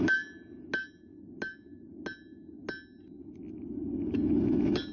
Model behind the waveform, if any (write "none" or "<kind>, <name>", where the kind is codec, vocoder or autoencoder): none